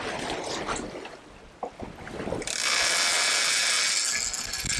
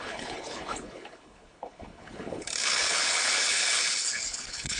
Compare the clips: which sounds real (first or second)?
first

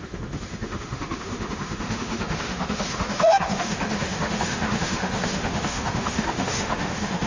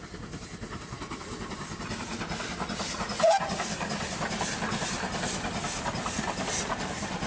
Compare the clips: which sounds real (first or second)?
second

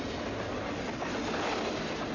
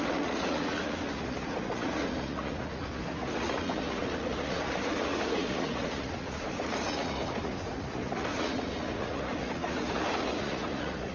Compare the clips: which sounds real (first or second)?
first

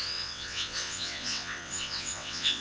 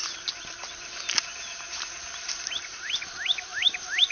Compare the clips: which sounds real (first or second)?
second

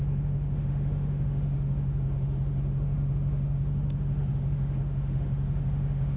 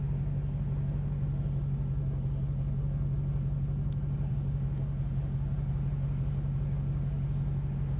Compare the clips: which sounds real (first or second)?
second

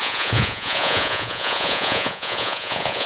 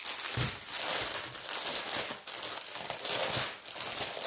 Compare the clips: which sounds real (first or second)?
second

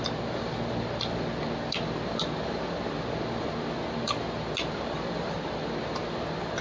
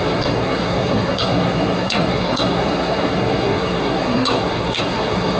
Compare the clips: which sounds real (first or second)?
first